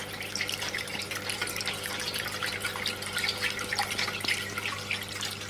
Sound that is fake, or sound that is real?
real